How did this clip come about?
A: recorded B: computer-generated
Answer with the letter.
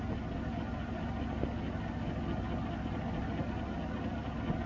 A